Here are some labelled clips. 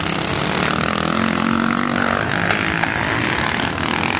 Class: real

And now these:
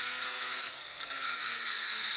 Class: fake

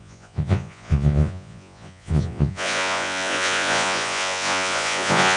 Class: fake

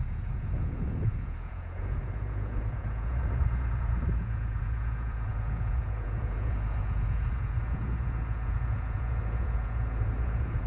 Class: fake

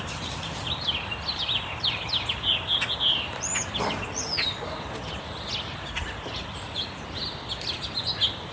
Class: real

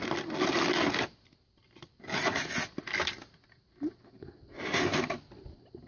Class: real